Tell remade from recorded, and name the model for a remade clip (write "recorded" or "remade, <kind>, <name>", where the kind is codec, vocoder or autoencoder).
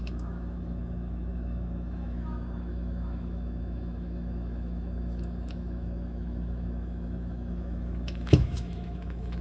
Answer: remade, autoencoder, DAC-VAE